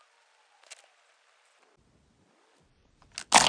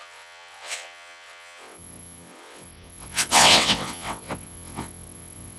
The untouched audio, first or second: first